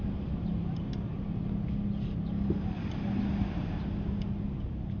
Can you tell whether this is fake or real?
real